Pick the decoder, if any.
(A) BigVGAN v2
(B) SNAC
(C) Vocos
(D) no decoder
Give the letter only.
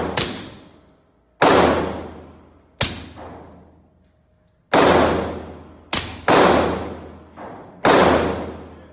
D